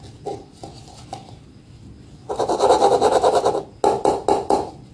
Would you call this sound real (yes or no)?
yes